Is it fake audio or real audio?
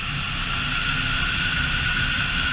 real